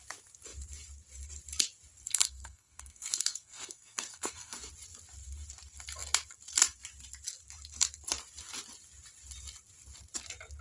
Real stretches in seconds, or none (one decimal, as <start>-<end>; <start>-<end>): 0.0-2.1; 4.7-10.6